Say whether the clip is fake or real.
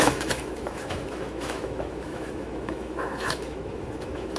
fake